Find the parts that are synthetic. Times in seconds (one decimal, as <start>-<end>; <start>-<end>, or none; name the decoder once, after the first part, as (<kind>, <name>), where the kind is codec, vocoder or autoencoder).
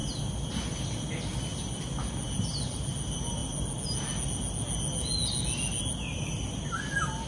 none